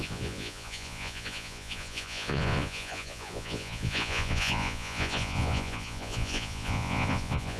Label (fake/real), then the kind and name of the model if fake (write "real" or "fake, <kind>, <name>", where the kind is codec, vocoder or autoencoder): fake, vocoder, Vocos